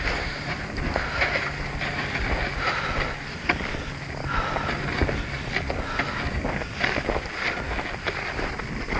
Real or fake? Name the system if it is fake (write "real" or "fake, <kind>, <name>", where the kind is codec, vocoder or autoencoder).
real